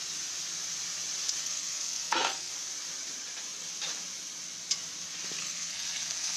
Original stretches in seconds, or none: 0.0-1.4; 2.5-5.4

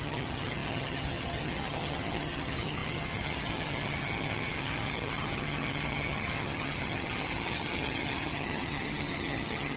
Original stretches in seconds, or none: none